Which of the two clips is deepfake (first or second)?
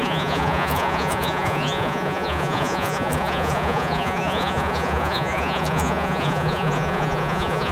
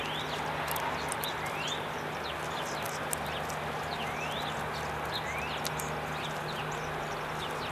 first